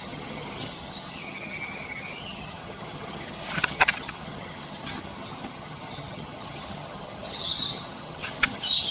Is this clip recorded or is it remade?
remade